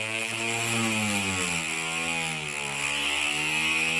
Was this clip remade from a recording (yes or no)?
no